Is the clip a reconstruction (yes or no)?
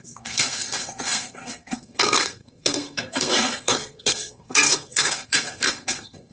yes